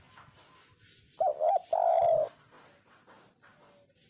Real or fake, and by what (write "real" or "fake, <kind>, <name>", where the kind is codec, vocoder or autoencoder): real